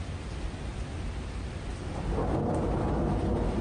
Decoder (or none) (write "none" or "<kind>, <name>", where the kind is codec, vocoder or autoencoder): vocoder, BigVGAN v2